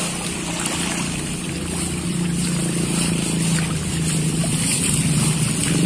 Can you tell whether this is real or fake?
real